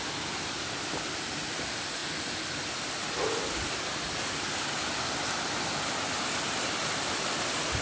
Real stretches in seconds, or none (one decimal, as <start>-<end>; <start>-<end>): 0.0-7.8